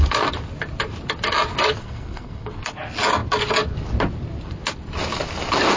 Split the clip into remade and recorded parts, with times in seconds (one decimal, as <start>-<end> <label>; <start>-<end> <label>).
0.0-1.8 recorded; 1.8-2.7 remade; 2.7-5.8 recorded